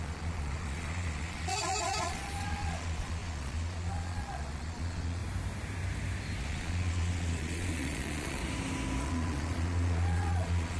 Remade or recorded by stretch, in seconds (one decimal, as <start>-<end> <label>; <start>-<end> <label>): 0.0-5.2 remade; 5.2-6.4 recorded; 6.4-8.4 remade; 8.4-9.0 recorded; 9.0-10.8 remade